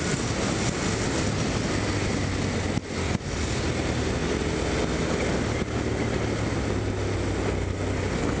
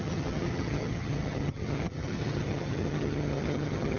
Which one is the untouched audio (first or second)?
first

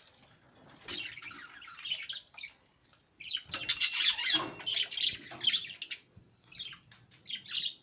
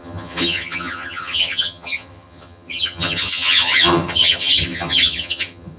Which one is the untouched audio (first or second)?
first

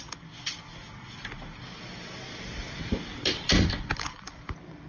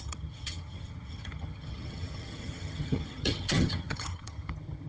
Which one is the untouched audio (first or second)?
first